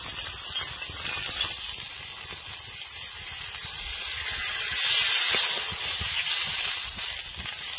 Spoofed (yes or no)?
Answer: no